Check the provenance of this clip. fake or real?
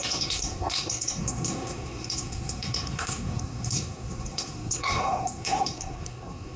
fake